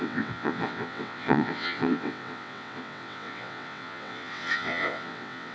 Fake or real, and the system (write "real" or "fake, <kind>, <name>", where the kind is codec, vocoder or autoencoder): fake, vocoder, WaveNeXt